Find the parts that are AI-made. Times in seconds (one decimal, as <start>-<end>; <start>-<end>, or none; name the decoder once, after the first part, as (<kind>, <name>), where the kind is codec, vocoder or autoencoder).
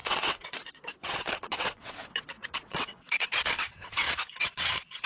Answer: 0.0-5.1 (vocoder, WaveNeXt)